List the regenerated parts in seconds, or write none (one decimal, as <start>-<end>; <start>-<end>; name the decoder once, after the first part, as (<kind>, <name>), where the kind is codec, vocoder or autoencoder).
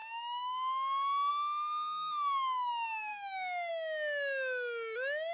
none